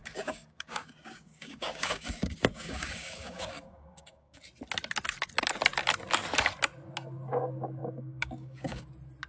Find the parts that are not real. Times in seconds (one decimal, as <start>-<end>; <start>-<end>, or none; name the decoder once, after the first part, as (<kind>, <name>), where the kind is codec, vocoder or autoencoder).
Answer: 0.0-4.4 (codec, DAC); 7.8-8.8